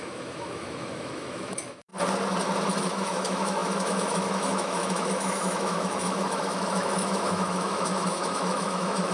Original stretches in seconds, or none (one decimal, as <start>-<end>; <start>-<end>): 1.9-2.8